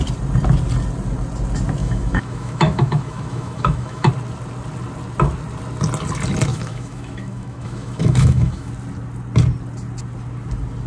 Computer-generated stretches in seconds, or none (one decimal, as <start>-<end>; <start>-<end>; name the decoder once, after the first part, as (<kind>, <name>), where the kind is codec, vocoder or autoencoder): 1.8-4.1 (autoencoder, DAC-VAE); 6.5-8.7